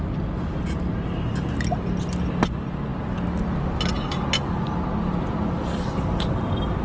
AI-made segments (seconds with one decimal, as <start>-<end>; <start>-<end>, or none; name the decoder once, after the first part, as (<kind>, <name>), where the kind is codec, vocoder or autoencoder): none